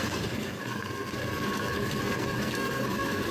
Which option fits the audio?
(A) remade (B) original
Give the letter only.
A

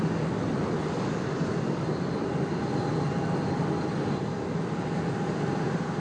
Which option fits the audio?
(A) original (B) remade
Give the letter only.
A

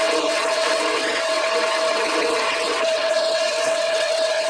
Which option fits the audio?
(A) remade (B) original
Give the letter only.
A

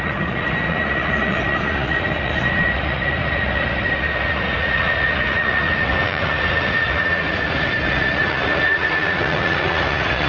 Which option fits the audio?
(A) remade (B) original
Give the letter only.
A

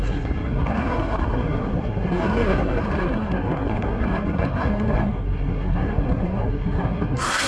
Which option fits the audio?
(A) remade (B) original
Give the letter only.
A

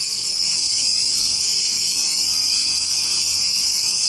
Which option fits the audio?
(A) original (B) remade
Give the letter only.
B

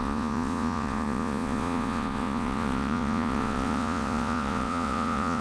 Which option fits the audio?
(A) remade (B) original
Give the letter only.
A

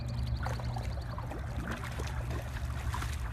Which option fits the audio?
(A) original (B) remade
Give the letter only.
A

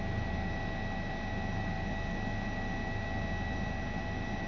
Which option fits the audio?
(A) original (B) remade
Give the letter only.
A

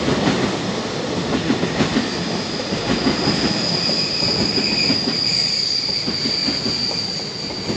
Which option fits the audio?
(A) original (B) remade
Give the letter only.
A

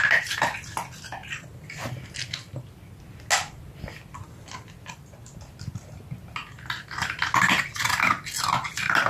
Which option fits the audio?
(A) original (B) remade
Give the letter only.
A